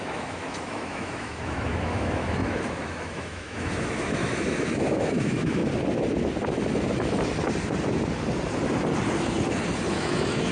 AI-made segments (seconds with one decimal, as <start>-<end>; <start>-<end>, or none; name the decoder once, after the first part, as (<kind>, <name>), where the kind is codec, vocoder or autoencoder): 0.0-5.6 (autoencoder, DAC-VAE); 9.9-10.5